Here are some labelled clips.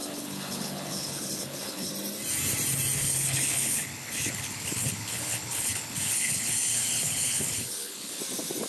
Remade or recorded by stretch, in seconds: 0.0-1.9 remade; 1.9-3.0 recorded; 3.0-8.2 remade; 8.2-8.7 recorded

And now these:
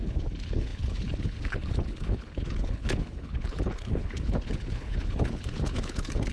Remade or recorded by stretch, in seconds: 0.0-6.3 remade

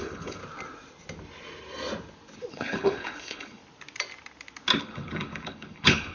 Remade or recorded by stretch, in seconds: 0.0-0.4 remade; 0.4-2.5 recorded; 2.5-3.6 remade; 3.6-4.8 recorded; 4.8-6.1 remade